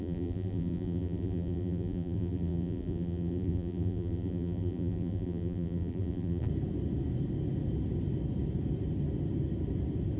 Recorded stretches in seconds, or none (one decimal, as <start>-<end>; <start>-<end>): 6.5-10.2